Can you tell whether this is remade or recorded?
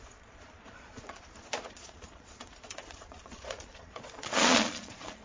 remade